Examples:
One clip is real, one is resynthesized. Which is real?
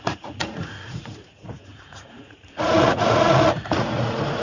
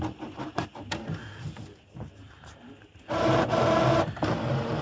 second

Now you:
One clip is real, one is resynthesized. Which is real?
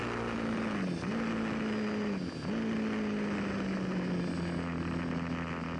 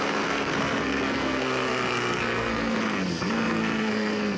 first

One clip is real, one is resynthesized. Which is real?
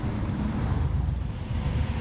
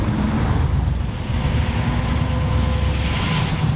second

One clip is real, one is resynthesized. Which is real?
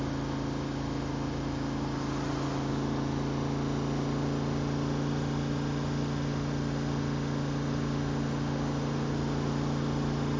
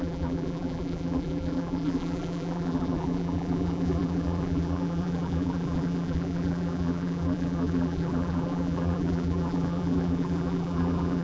first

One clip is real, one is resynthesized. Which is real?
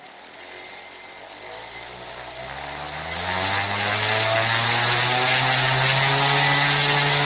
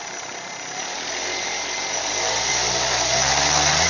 first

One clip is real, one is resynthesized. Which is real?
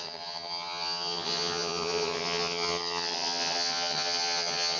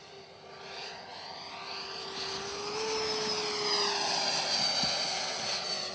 second